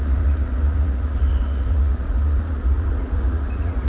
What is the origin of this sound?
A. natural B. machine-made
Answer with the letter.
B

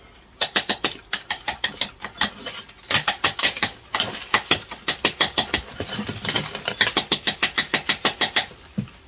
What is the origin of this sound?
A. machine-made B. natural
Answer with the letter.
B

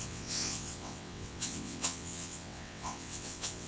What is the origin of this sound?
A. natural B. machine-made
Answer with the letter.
B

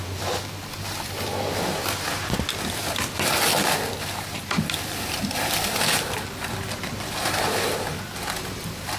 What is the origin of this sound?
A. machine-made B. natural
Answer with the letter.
A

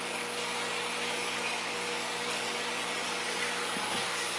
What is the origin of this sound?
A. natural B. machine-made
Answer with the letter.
B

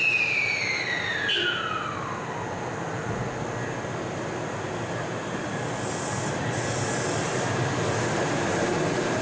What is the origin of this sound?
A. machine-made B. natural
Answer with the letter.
B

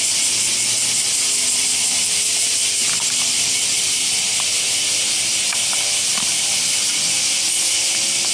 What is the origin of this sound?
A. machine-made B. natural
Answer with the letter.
B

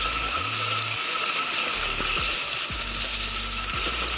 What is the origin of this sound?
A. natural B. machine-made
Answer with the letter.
A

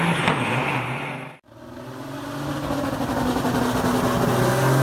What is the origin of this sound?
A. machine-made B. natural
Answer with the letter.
B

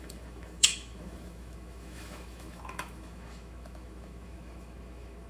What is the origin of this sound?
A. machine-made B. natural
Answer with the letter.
A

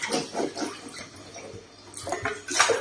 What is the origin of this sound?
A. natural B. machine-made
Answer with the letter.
A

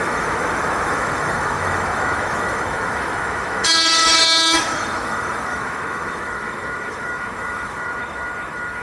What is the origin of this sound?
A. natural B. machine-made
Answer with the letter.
B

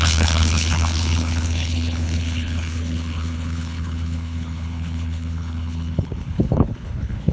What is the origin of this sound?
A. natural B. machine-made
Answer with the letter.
B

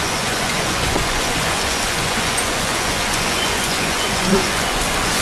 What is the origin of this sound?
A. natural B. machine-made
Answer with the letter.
B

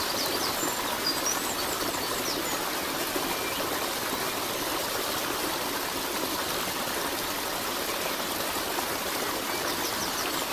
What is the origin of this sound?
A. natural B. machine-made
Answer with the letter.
A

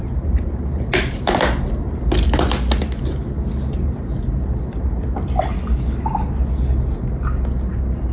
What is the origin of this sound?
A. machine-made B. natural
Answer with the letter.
B